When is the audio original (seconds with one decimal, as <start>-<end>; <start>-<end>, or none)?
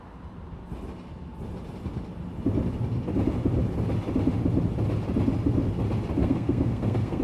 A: 0.0-6.2